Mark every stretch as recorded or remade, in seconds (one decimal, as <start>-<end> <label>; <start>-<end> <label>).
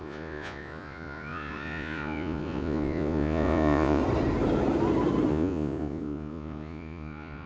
0.0-4.0 remade; 4.0-5.3 recorded; 5.3-7.5 remade